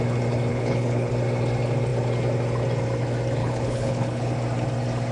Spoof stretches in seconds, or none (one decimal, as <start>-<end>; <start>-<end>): 0.5-1.1; 3.4-4.3